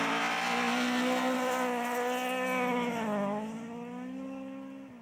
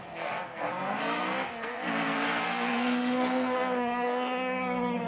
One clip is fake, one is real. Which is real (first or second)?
first